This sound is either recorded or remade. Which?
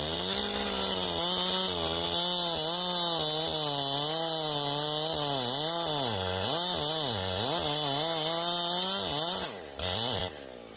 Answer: recorded